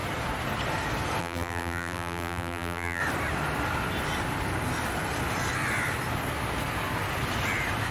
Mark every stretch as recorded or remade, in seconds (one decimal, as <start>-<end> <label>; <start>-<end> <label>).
0.0-1.2 recorded; 1.2-3.0 remade; 3.0-7.9 recorded